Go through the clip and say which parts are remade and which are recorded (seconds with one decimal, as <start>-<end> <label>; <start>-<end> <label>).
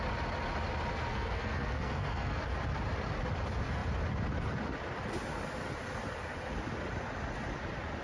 0.0-0.9 recorded; 0.9-2.4 remade; 2.4-8.0 recorded